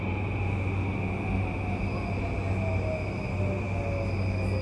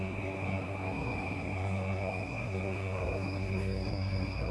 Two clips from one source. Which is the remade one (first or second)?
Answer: second